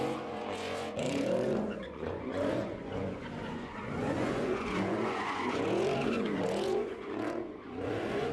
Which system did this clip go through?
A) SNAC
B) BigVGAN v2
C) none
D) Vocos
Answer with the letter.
D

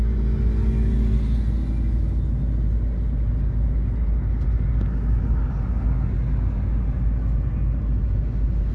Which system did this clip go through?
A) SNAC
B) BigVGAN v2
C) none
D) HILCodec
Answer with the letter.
C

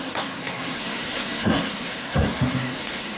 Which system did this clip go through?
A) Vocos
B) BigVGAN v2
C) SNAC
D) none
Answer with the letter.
C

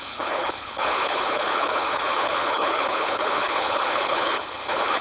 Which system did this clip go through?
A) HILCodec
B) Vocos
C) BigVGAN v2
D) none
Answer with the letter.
A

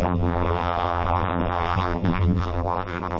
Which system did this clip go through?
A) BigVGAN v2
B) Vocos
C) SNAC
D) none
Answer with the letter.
A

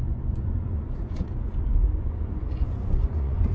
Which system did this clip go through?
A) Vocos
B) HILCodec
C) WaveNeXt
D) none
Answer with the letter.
A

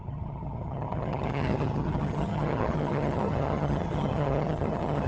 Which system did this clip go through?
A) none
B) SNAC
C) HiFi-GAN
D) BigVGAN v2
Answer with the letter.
C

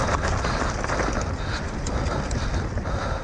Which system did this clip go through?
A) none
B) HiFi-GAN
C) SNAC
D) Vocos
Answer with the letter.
A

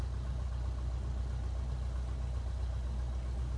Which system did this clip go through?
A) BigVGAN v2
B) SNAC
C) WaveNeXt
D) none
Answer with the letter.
D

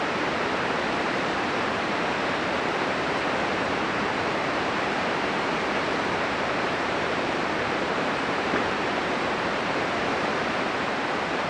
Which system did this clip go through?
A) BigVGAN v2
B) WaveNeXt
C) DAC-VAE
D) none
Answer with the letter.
A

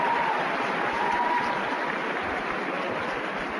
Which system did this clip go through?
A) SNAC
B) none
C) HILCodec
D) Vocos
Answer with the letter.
B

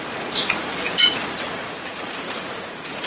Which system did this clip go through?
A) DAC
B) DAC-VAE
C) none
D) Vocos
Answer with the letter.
D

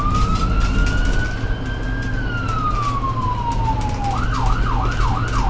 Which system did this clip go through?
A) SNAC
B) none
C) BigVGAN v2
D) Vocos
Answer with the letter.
B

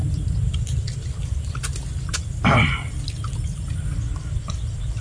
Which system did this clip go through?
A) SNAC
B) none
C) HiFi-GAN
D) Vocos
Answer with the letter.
B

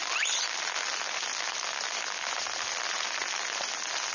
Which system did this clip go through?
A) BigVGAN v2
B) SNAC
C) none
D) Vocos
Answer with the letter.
C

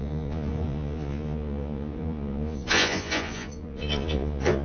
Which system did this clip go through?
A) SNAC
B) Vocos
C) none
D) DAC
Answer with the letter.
B